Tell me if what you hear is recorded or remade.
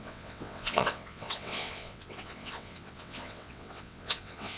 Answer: remade